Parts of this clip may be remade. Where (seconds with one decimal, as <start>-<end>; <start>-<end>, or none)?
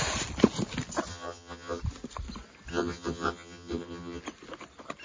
1.1-1.8; 2.7-4.2